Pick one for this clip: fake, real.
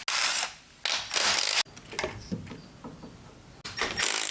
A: real